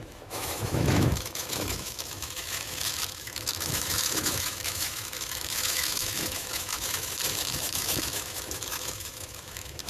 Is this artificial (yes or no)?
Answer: yes